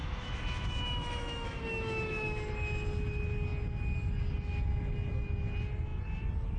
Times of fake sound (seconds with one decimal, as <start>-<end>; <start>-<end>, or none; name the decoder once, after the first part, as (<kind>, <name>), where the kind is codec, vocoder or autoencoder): 0.0-2.5 (autoencoder, DAC-VAE)